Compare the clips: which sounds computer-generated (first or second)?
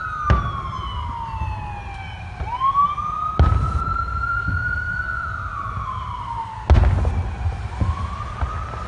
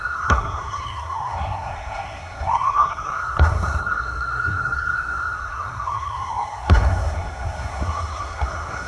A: second